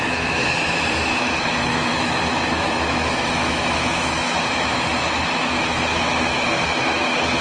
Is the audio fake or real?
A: fake